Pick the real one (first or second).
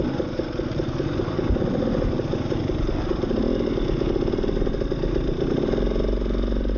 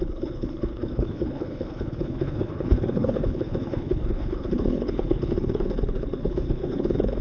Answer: first